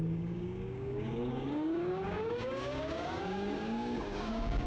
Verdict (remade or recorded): remade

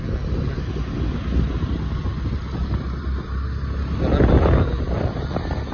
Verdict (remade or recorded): recorded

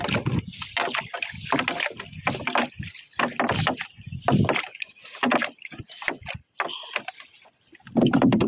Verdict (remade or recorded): recorded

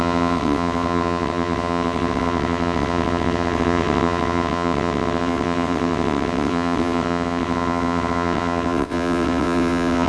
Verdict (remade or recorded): remade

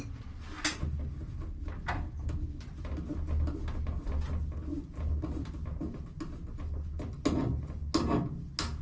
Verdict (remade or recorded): recorded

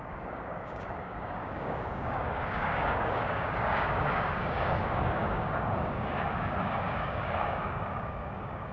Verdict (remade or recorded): remade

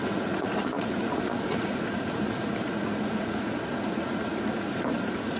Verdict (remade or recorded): remade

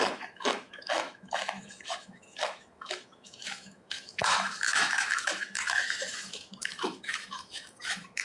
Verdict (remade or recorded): remade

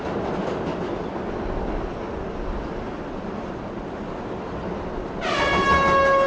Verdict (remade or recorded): recorded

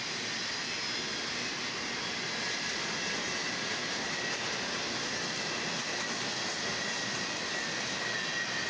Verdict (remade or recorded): recorded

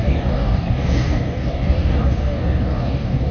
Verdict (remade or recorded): remade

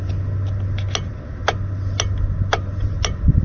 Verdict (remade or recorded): recorded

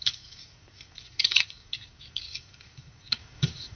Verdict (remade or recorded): remade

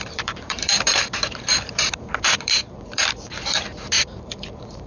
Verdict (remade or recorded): remade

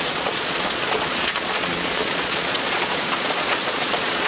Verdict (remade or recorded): remade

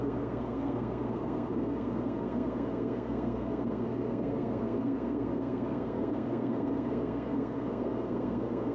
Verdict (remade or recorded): remade